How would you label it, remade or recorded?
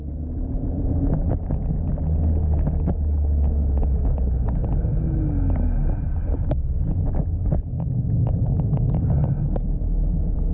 recorded